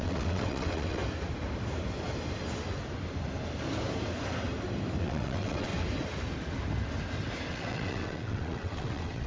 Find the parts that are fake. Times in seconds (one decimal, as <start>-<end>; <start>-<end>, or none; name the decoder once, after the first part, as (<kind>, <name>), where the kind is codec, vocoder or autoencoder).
0.0-1.0 (vocoder, WaveNeXt); 5.0-5.7; 7.5-9.3